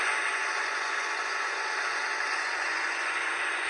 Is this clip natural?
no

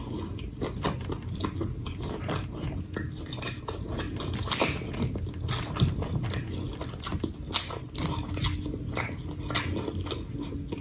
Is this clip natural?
yes